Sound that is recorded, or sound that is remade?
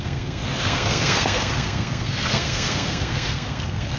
remade